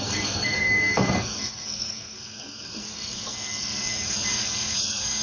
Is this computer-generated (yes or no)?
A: yes